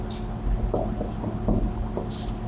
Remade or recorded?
recorded